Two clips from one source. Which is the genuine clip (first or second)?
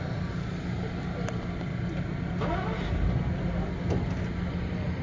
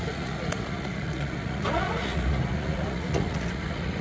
first